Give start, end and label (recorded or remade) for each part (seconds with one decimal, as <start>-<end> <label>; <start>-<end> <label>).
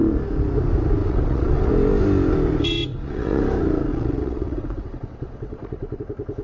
0.0-1.0 recorded; 1.0-1.7 remade; 1.7-2.9 recorded; 2.9-3.4 remade; 3.4-3.9 recorded; 3.9-6.0 remade; 6.0-6.4 recorded